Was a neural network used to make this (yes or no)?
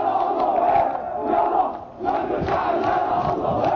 no